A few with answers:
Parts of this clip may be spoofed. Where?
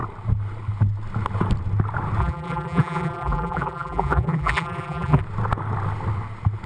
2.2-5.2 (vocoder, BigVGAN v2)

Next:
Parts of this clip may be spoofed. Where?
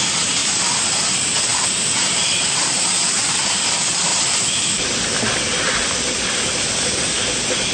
none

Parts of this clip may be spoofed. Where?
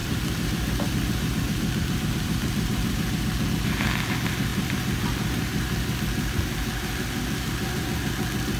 0.0-3.5 (vocoder, BigVGAN v2); 4.5-5.9